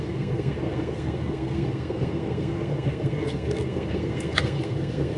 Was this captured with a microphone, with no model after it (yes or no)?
no